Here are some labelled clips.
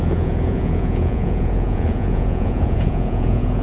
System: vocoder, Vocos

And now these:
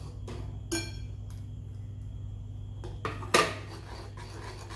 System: none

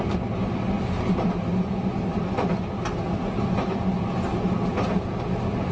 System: none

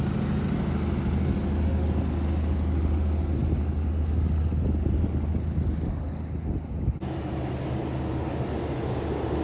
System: none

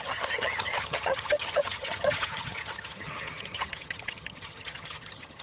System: vocoder, HiFi-GAN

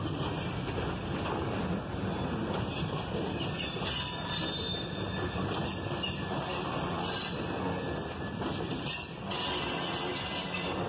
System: none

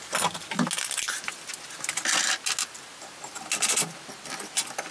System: none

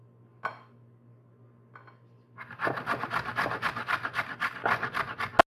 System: none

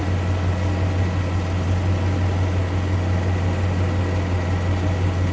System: none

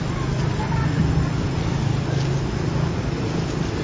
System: none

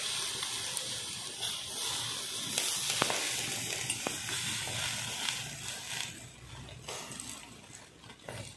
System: none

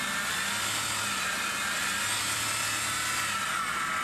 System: none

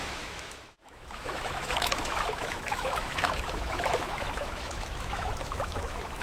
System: autoencoder, DAC-VAE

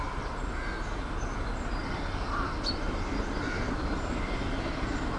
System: none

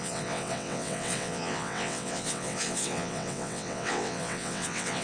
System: vocoder, WaveNeXt